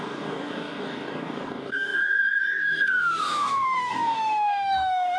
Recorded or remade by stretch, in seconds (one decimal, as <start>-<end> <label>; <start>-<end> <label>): 0.0-5.2 remade